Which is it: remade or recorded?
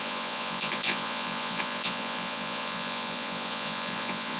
remade